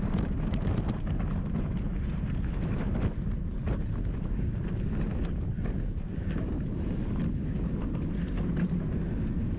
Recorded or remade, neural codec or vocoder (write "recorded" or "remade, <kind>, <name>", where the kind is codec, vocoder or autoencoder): recorded